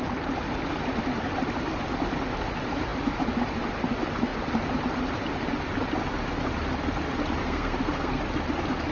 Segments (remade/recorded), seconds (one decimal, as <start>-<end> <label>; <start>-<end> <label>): 0.0-7.4 recorded; 7.4-8.2 remade; 8.2-8.9 recorded